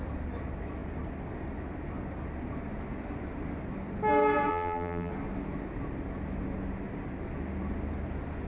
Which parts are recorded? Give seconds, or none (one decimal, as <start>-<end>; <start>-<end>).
0.0-4.5; 5.1-8.5